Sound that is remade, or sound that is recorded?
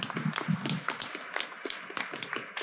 recorded